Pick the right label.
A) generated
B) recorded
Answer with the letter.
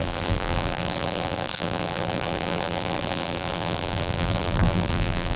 A